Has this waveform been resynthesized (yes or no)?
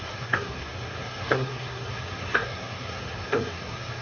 yes